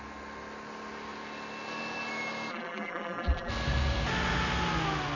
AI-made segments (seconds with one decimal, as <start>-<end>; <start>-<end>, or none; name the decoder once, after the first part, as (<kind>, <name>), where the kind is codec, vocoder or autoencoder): 2.5-3.5 (vocoder, BigVGAN v2)